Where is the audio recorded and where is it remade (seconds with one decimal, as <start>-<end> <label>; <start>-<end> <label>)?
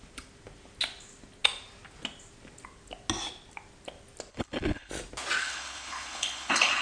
0.0-4.3 recorded; 4.3-4.9 remade; 4.9-5.4 recorded; 5.4-6.8 remade